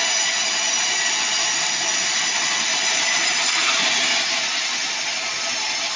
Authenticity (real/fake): real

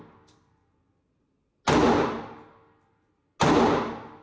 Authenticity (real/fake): real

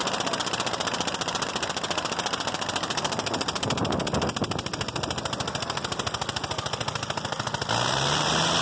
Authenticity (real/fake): real